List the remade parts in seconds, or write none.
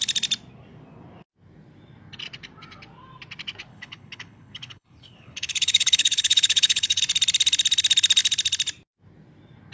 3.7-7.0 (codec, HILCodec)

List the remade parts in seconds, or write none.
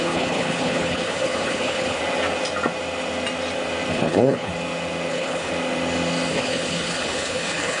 0.0-2.0 (codec, HILCodec); 3.9-4.5; 5.1-5.5; 6.3-7.8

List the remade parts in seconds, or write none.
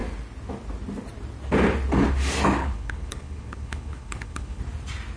2.6-4.6 (codec, HILCodec)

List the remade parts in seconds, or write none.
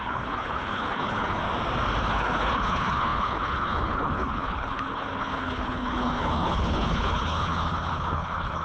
0.0-1.4 (codec, HILCodec); 2.0-8.6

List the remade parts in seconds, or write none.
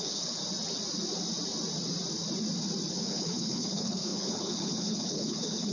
0.0-0.4 (codec, HILCodec); 2.9-5.7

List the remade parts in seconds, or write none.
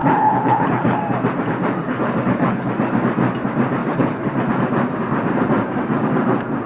0.0-1.0 (codec, HILCodec); 1.8-2.7; 3.8-4.3